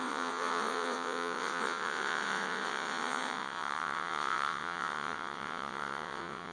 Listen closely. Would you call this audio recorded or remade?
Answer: remade